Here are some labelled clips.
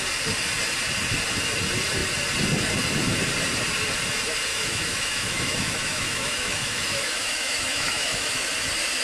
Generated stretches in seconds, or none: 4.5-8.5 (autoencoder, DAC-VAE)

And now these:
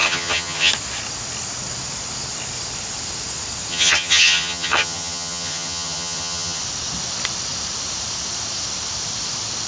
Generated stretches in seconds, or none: 0.0-0.7 (vocoder, HiFi-GAN); 3.7-6.6

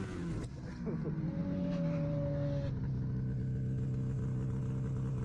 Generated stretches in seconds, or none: none